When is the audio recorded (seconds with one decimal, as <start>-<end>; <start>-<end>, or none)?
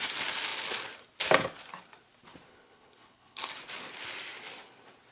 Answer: 0.0-2.5; 3.5-5.1